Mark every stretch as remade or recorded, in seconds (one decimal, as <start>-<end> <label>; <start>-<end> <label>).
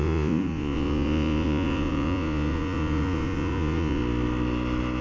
0.0-4.0 remade; 4.0-5.0 recorded